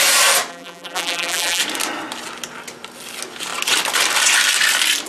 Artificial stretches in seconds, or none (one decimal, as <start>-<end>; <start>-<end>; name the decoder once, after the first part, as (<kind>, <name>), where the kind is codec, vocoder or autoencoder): 0.5-1.6 (vocoder, BigVGAN v2)